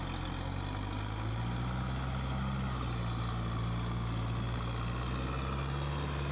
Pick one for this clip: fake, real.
real